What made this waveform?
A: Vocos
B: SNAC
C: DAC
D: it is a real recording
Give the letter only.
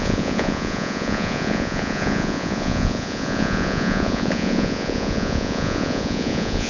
A